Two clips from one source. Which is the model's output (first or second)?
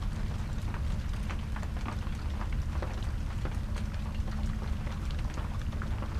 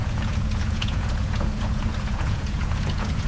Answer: second